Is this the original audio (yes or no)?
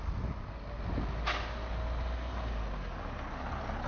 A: yes